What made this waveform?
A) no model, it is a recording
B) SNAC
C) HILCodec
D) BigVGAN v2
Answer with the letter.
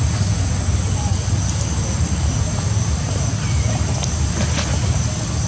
A